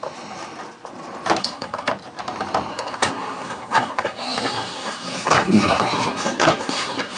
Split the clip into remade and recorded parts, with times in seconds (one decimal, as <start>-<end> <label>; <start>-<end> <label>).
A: 0.0-1.4 recorded; 1.4-1.9 remade; 1.9-2.7 recorded; 2.7-7.2 remade